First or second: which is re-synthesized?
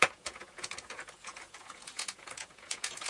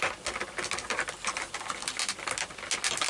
first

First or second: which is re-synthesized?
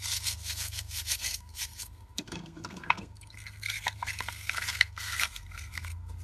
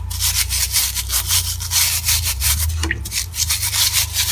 first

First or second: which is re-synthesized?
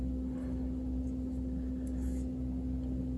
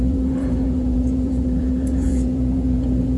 second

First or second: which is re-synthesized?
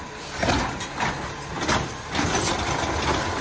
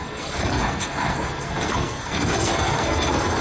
second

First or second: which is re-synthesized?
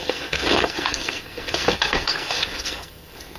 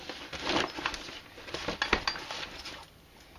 first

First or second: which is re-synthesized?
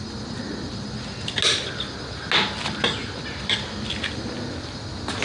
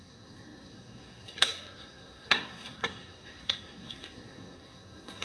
second